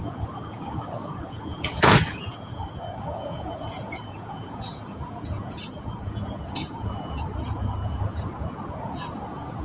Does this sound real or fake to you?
fake